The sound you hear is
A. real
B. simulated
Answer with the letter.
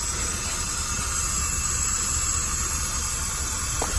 A